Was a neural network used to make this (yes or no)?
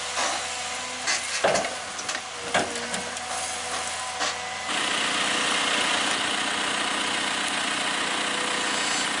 no